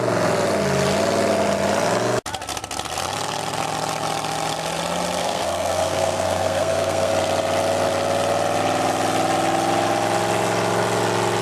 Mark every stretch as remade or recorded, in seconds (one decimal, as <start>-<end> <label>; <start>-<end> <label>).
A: 0.0-5.2 recorded; 5.2-7.1 remade; 7.1-11.4 recorded